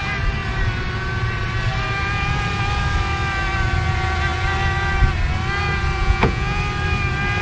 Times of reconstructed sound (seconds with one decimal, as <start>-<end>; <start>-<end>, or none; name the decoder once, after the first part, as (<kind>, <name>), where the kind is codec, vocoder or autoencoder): 6.0-6.6 (vocoder, Vocos)